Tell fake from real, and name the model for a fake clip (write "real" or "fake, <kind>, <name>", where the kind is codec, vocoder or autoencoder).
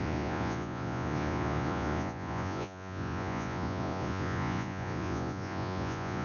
fake, vocoder, Vocos